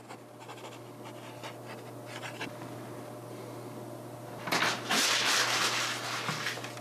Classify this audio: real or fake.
real